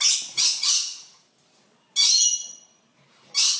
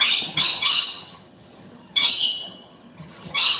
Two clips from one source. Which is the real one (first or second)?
first